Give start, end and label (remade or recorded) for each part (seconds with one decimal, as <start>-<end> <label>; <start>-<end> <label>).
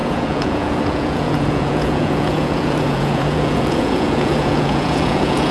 0.0-5.5 remade